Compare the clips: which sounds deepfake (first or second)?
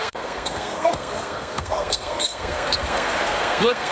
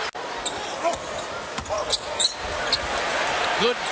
first